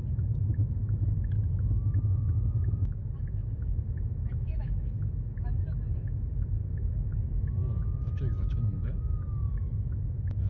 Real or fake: fake